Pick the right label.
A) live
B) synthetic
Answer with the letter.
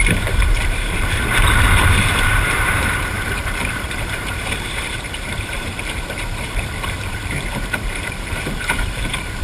B